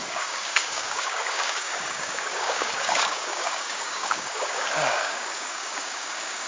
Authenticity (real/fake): fake